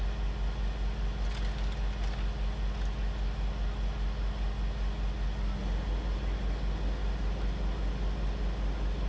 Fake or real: real